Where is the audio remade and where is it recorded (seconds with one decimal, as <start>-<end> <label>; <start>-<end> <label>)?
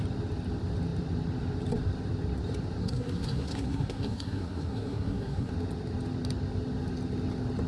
0.0-2.8 recorded; 2.8-5.5 remade; 5.5-7.7 recorded